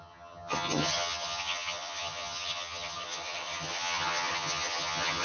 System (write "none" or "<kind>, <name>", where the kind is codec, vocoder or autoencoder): vocoder, HiFi-GAN